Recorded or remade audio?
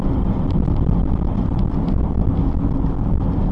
recorded